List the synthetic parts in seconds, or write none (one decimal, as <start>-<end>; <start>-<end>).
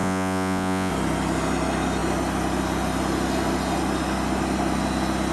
0.0-0.9